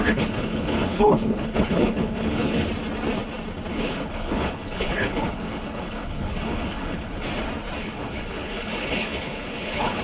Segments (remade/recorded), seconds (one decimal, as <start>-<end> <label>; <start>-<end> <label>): 0.0-2.7 remade; 2.7-3.7 recorded; 3.7-7.2 remade; 7.2-7.8 recorded; 7.8-10.0 remade